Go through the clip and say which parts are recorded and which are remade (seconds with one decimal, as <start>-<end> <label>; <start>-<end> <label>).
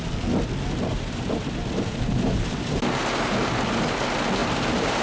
0.0-0.9 recorded; 0.9-2.8 remade; 2.8-4.4 recorded; 4.4-5.0 remade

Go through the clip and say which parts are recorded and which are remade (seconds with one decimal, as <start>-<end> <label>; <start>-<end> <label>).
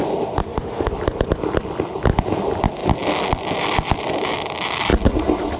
0.0-0.4 recorded; 0.4-0.9 remade; 0.9-5.6 recorded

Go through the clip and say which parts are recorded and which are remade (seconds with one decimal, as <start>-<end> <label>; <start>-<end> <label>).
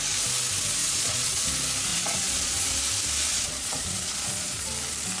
0.0-0.8 recorded; 0.8-1.4 remade; 1.4-1.9 recorded; 1.9-2.8 remade; 2.8-3.3 recorded; 3.3-4.7 remade; 4.7-5.2 recorded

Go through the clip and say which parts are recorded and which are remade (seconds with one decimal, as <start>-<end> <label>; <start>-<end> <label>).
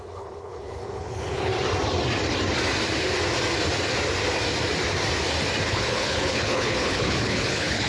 0.0-1.5 remade; 1.5-5.7 recorded; 5.7-7.9 remade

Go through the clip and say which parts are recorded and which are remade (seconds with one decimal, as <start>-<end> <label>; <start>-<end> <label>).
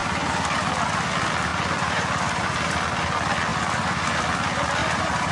0.0-0.7 remade; 0.7-1.5 recorded; 1.5-2.7 remade; 2.7-4.8 recorded; 4.8-5.3 remade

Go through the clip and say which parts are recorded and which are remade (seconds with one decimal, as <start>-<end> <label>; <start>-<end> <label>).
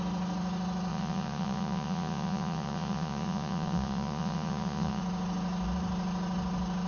0.0-0.9 recorded; 0.9-5.0 remade; 5.0-6.9 recorded